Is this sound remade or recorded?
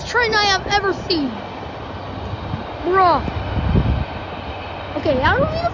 recorded